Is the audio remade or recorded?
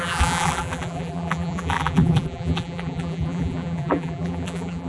remade